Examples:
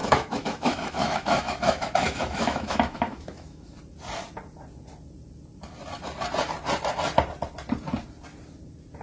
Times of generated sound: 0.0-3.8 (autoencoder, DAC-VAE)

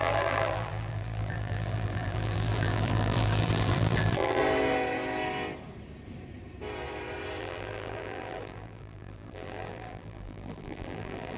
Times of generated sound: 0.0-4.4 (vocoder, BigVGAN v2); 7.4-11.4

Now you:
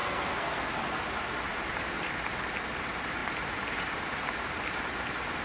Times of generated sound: 0.0-0.7 (codec, SNAC)

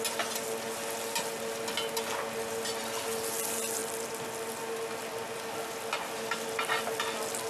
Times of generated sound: none

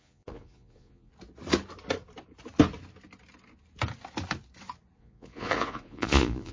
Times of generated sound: 0.0-1.1 (vocoder, Vocos); 5.0-6.5

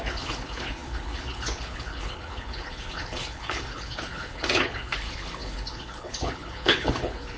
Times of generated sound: 0.0-7.4 (codec, HILCodec)